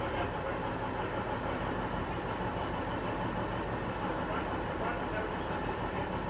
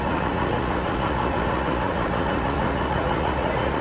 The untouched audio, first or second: first